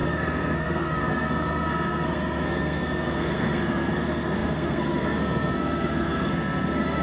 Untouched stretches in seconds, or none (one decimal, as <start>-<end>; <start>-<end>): none